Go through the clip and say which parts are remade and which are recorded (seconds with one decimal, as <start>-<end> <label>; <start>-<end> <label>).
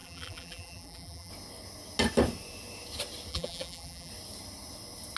0.0-1.3 remade; 1.3-3.3 recorded; 3.3-4.1 remade; 4.1-5.2 recorded